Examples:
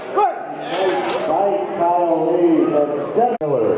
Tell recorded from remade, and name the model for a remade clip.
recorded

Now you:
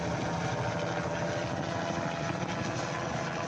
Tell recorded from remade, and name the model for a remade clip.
recorded